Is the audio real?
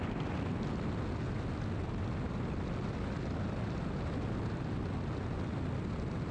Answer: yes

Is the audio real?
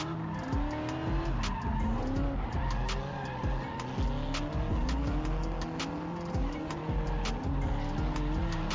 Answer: yes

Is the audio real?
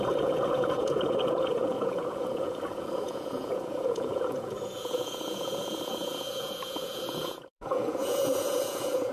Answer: no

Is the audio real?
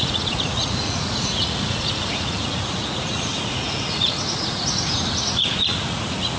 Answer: no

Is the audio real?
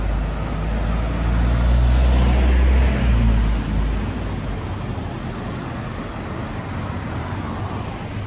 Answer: yes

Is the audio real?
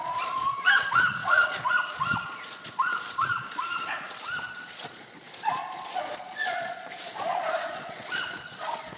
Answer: no